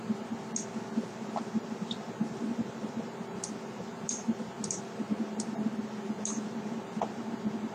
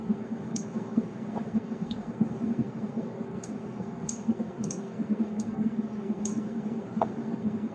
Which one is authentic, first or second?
first